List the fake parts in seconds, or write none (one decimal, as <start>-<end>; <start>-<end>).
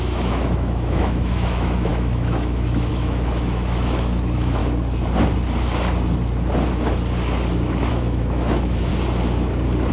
0.0-4.6; 7.9-8.9